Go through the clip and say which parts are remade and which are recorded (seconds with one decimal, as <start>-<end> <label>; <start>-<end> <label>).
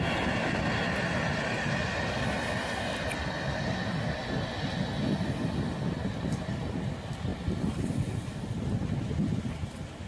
0.0-10.1 recorded